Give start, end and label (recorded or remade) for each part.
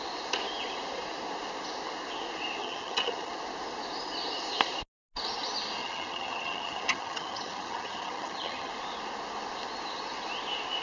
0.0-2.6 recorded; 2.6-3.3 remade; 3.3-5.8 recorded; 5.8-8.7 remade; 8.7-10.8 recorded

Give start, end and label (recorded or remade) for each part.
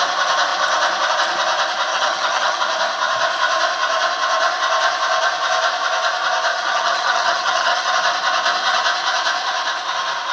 0.0-1.9 recorded; 1.9-2.6 remade; 2.6-6.5 recorded; 6.5-7.9 remade; 7.9-10.3 recorded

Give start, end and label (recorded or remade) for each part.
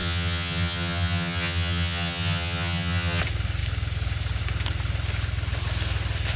0.0-3.2 remade; 3.2-6.4 recorded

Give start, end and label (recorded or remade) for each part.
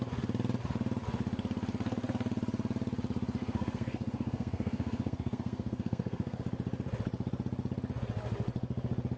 0.0-3.4 recorded; 3.4-6.4 remade; 6.4-9.2 recorded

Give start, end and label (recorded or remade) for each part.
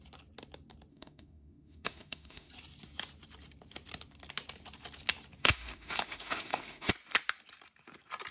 0.0-0.9 recorded; 0.9-2.5 remade; 2.5-5.4 recorded; 5.4-6.9 remade; 6.9-8.3 recorded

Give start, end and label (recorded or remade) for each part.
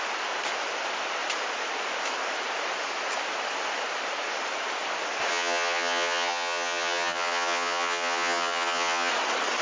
0.0-5.3 recorded; 5.3-9.1 remade; 9.1-9.6 recorded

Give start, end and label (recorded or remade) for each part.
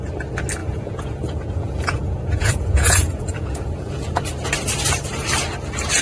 0.0-0.6 recorded; 0.6-4.2 remade; 4.2-6.0 recorded